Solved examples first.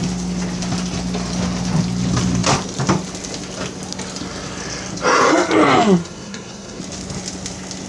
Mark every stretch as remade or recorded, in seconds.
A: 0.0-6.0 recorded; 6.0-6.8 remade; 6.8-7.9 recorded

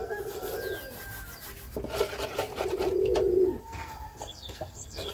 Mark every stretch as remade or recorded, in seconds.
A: 0.0-0.5 remade; 0.5-3.6 recorded; 3.6-5.1 remade

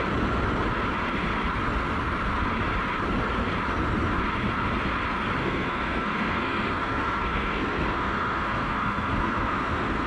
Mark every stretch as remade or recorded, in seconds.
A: 0.0-5.4 recorded; 5.4-10.1 remade

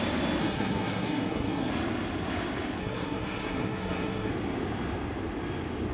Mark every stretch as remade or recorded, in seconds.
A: 0.0-0.4 recorded; 0.4-1.7 remade; 1.7-2.8 recorded; 2.8-4.3 remade; 4.3-5.9 recorded

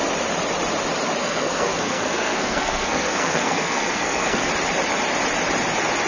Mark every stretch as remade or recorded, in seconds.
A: 0.0-1.2 recorded; 1.2-4.5 remade; 4.5-6.1 recorded

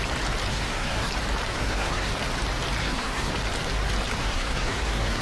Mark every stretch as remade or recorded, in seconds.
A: 0.0-0.5 recorded; 0.5-1.1 remade; 1.1-1.5 recorded; 1.5-2.1 remade; 2.1-2.8 recorded; 2.8-3.3 remade; 3.3-4.2 recorded; 4.2-5.2 remade